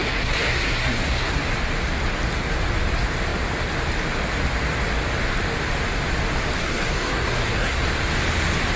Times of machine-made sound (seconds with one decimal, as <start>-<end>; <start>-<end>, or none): 0.0-1.4; 6.6-7.8